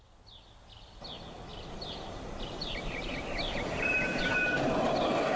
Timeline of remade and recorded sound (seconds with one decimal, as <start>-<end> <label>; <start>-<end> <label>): 0.0-1.5 recorded; 1.5-4.2 remade; 4.2-5.4 recorded